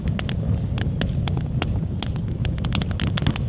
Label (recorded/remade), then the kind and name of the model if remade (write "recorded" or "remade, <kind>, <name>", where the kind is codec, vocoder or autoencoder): recorded